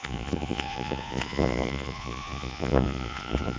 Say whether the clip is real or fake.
fake